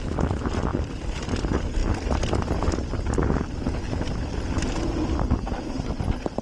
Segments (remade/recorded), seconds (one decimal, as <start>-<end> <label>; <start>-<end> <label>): 0.0-0.7 recorded; 0.7-1.3 remade; 1.3-6.4 recorded